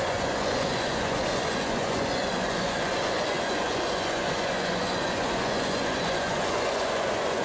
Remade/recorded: remade